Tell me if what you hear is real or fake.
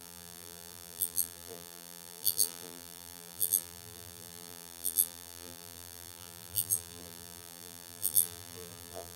fake